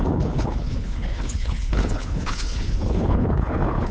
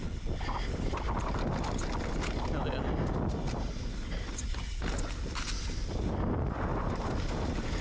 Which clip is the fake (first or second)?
first